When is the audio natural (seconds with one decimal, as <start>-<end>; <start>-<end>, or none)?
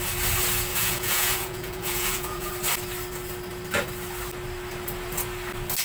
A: 0.0-0.7; 2.5-5.8